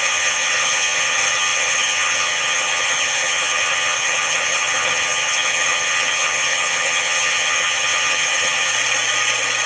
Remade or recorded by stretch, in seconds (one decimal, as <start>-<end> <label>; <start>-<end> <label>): 0.0-8.7 remade; 8.7-9.7 recorded